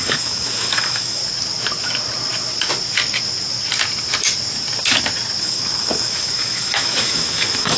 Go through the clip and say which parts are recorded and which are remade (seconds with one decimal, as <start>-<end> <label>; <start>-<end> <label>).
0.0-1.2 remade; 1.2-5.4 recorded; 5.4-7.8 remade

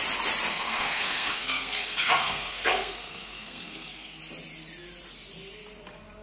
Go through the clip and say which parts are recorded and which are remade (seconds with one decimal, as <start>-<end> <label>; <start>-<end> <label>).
0.0-0.5 recorded; 0.5-4.2 remade; 4.2-6.2 recorded

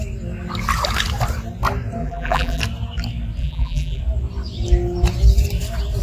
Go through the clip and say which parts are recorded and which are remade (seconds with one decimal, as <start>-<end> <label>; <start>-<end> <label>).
0.0-2.0 recorded; 2.0-2.6 remade; 2.6-3.4 recorded; 3.4-4.0 remade; 4.0-6.0 recorded